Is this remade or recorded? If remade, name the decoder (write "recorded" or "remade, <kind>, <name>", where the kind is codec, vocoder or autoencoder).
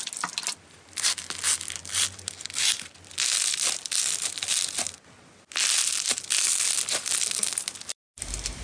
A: recorded